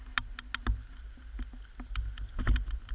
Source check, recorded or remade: recorded